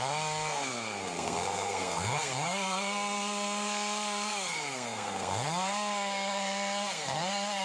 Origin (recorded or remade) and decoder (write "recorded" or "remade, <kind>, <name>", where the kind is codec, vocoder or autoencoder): remade, codec, SNAC